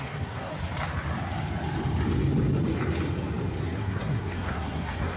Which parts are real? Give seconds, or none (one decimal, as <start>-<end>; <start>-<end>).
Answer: 0.5-3.6